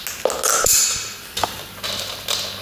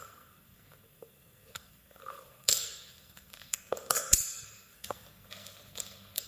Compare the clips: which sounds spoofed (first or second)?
second